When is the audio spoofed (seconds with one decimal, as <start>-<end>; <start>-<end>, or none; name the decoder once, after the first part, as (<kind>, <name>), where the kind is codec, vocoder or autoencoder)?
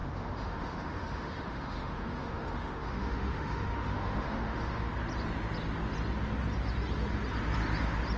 0.0-4.9 (autoencoder, DAC-VAE)